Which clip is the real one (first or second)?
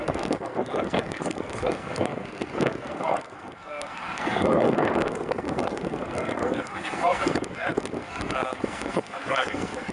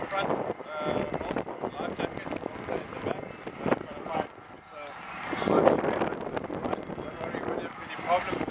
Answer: second